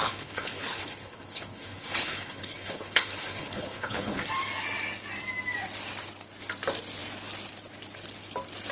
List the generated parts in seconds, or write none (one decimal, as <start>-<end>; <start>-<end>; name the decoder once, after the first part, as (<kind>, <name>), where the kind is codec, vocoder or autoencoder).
0.0-4.2 (codec, HILCodec)